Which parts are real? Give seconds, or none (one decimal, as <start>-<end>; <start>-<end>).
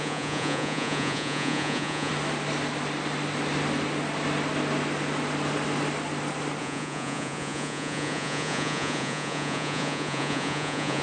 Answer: 2.1-6.6